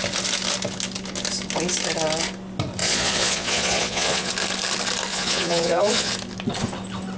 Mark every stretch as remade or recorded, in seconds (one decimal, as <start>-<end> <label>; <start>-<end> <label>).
0.0-2.8 recorded; 2.8-4.3 remade; 4.3-5.1 recorded; 5.1-6.1 remade; 6.1-7.2 recorded